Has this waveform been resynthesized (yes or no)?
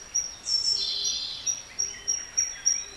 no